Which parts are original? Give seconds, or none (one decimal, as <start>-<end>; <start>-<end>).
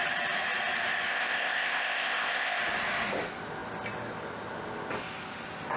0.0-1.1; 2.6-5.8